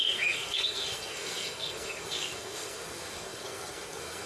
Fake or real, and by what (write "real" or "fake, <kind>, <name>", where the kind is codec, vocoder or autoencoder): fake, codec, SNAC